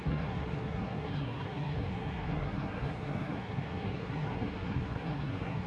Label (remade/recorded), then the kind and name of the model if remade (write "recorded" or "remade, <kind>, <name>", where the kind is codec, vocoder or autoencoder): remade, codec, SNAC